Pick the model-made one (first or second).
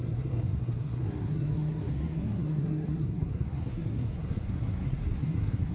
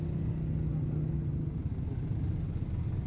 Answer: first